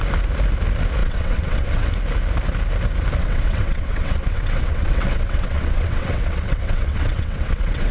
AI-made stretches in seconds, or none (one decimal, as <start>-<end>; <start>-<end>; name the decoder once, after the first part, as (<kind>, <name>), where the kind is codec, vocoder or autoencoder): 1.0-1.9 (vocoder, WaveNeXt); 3.2-7.9